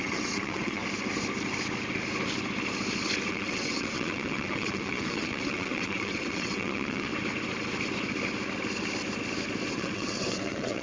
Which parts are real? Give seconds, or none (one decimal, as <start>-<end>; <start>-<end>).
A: 0.8-3.3; 7.1-9.7

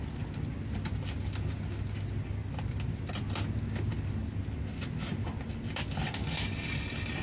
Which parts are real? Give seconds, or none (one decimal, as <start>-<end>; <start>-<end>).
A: 0.0-7.2

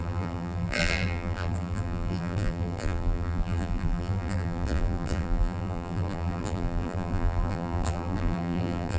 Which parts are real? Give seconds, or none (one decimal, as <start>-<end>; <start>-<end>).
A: none

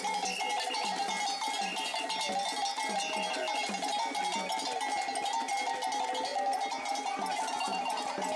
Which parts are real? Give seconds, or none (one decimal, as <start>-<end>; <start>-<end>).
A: 0.0-8.4

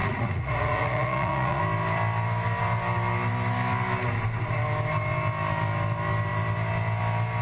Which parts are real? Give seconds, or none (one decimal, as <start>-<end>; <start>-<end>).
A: 1.6-7.4